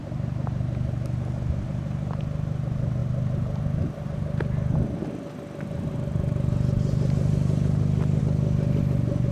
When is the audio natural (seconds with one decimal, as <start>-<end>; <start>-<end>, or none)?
0.0-9.3